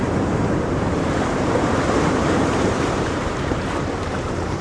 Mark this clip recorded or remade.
remade